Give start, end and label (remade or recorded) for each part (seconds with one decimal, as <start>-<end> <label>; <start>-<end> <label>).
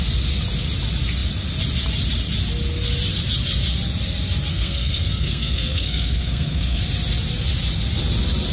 0.0-4.5 recorded; 4.5-6.8 remade; 6.8-8.5 recorded